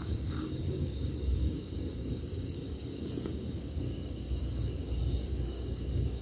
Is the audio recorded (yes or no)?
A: no